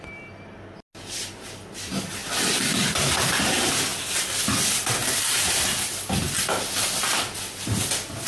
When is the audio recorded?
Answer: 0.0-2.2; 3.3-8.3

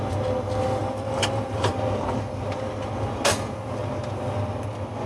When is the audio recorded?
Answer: 0.0-0.8; 1.7-5.1

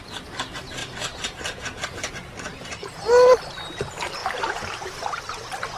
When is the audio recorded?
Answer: 0.0-0.8; 2.1-2.5; 3.1-4.2; 5.2-5.8

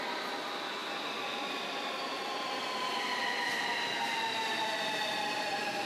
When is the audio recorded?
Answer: none

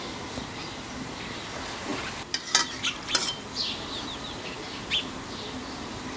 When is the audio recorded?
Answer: 0.0-6.2

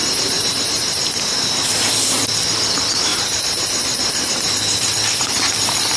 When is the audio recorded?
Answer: 1.9-3.1; 4.9-6.0